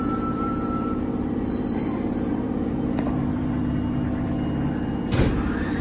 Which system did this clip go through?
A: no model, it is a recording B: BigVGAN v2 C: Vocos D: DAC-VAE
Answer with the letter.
B